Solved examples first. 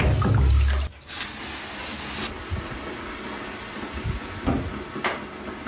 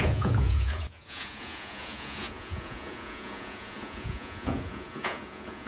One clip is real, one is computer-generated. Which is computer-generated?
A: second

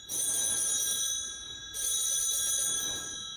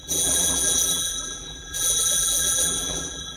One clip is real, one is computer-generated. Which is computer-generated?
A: second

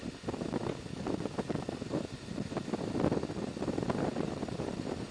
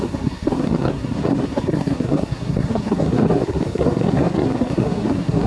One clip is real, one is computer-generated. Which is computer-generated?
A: second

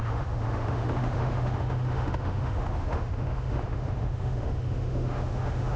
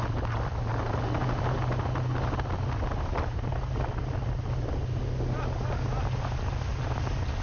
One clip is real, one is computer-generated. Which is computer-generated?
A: first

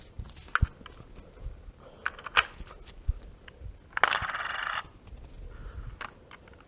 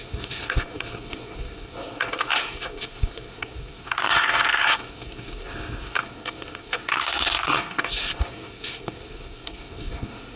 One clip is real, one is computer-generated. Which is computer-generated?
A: second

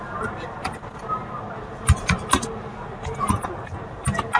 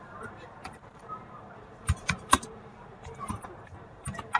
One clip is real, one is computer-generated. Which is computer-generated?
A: second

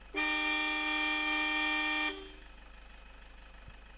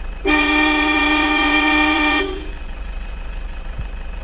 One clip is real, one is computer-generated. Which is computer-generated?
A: second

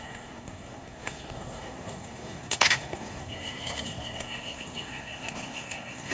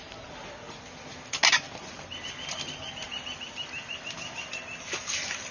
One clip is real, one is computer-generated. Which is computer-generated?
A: first